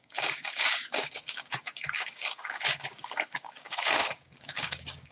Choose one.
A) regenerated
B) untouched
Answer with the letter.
A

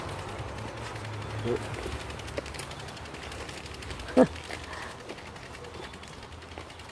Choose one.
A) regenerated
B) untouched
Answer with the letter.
B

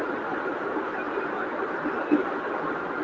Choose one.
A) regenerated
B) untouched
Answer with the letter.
B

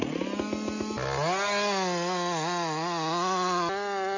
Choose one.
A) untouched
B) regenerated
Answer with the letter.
A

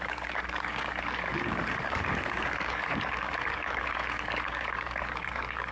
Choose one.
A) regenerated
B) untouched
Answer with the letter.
A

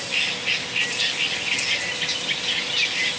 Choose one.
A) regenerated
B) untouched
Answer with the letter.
B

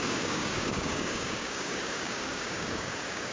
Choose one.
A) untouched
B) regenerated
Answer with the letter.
B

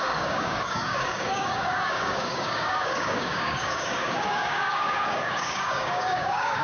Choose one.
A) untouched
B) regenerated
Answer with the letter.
B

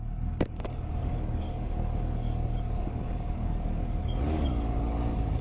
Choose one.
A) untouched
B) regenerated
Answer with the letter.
B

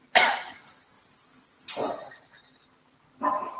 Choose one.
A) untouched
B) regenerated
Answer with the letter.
A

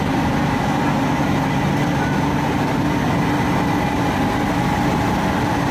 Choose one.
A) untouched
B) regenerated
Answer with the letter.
A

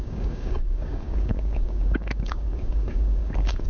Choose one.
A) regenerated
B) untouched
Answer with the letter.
A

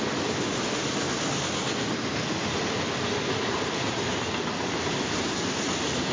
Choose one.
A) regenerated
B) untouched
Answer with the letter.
B